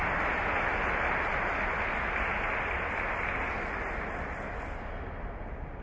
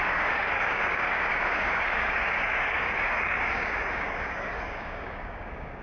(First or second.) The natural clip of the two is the first